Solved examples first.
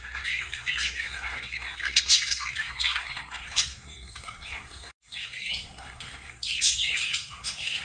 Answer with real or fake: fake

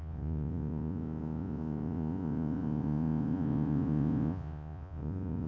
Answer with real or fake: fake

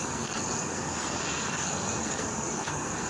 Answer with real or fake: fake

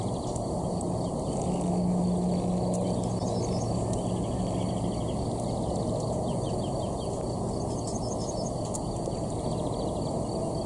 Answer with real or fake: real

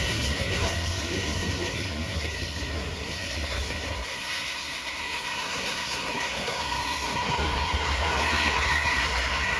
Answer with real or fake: fake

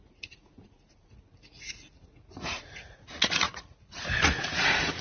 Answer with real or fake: fake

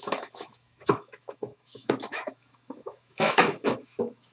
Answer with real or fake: fake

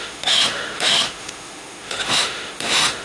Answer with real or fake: fake